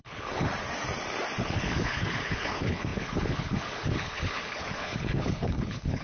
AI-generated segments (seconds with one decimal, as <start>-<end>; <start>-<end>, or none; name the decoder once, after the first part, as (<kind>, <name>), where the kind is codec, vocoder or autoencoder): 0.0-0.5 (codec, HILCodec); 1.4-6.0